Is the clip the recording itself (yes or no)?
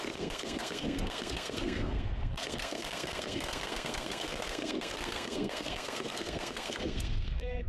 no